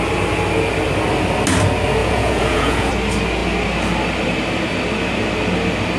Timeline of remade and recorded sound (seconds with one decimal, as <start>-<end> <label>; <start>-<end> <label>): 0.0-2.0 recorded; 2.0-2.9 remade; 2.9-6.0 recorded